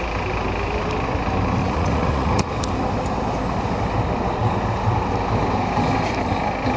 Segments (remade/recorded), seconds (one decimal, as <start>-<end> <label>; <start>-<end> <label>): 0.0-1.6 recorded; 1.6-2.5 remade; 2.5-6.8 recorded